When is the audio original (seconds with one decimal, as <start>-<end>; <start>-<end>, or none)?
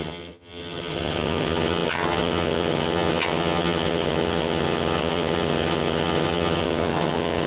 none